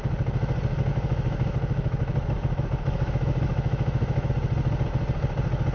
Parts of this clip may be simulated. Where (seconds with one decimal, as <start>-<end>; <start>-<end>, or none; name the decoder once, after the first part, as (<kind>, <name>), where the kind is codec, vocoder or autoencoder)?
0.9-4.3 (autoencoder, DAC-VAE)